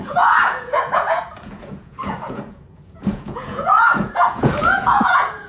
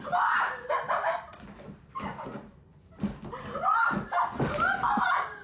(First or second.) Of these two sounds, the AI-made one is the first